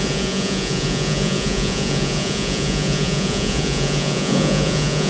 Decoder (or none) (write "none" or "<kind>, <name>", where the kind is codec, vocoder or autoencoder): vocoder, Vocos